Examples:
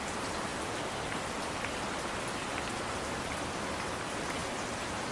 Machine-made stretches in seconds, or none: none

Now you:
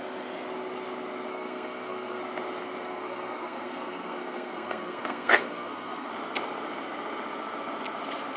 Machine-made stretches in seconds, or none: 1.3-2.2 (codec, SNAC); 2.8-6.1

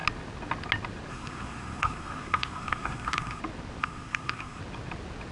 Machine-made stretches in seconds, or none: 1.1-3.4 (codec, SNAC); 3.8-4.6

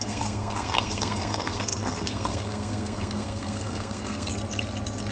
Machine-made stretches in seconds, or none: 0.0-4.3 (codec, SNAC)

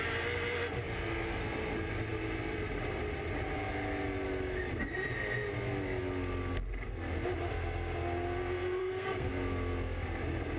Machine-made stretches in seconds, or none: 8.8-9.3 (codec, SNAC)

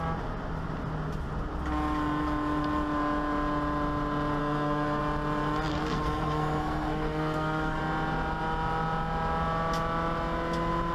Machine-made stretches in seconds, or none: 4.4-5.0 (codec, SNAC); 5.7-7.8